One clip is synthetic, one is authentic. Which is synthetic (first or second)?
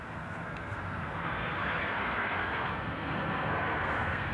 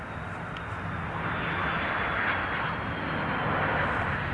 first